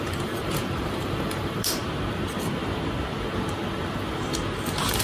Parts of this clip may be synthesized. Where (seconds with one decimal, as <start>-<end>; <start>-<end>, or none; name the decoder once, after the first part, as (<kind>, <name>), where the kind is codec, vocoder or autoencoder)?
0.0-1.8 (vocoder, BigVGAN v2)